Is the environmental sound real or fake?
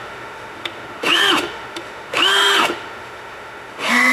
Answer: fake